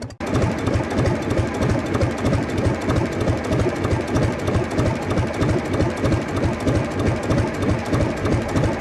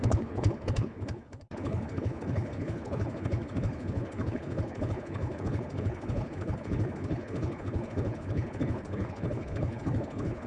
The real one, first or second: first